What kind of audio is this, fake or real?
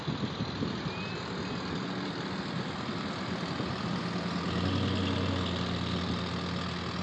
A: real